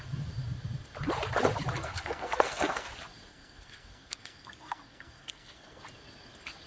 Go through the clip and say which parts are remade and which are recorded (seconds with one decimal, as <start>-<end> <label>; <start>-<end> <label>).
0.0-1.8 recorded; 1.8-2.9 remade; 2.9-3.3 recorded; 3.3-5.8 remade; 5.8-6.7 recorded